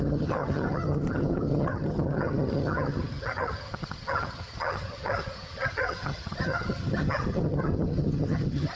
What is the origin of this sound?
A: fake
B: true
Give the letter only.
A